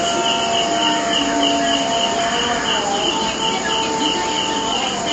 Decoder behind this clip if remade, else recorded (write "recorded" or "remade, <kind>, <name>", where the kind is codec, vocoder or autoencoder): recorded